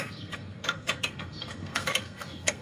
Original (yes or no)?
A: no